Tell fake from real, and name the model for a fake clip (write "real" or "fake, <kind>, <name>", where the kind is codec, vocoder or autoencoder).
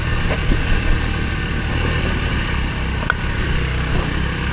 real